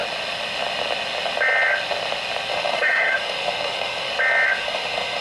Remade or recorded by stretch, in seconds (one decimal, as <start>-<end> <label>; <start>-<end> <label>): 0.0-2.5 recorded; 2.5-4.1 remade; 4.1-4.6 recorded; 4.6-5.2 remade